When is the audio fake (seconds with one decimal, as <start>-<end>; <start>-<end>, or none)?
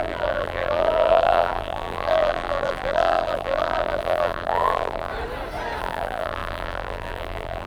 0.0-5.1; 5.8-7.7